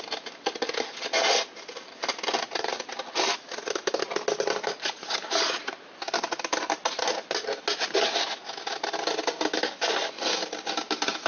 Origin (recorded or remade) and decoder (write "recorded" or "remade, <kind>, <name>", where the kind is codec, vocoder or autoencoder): recorded